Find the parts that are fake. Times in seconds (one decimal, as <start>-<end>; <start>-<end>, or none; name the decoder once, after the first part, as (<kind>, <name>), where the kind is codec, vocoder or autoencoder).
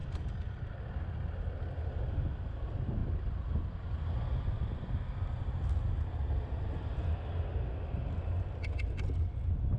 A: none